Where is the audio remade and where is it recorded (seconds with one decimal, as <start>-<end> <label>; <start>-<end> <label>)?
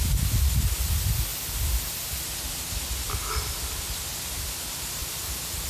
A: 0.0-5.7 recorded